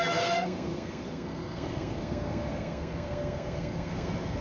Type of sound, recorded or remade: remade